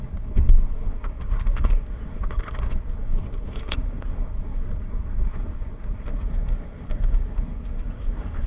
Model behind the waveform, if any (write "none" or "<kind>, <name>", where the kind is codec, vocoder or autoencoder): codec, SNAC